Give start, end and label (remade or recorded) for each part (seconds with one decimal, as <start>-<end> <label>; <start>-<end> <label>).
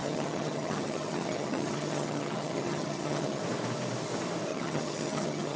0.0-3.4 remade; 3.4-4.5 recorded; 4.5-5.6 remade